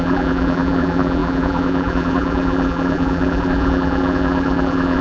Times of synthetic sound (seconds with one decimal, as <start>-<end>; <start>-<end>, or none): 0.0-5.0

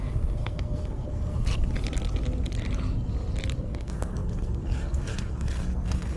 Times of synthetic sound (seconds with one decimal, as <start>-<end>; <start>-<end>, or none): 0.0-1.5; 3.6-6.2

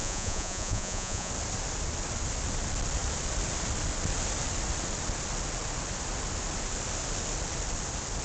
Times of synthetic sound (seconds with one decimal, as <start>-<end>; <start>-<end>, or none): 0.0-1.3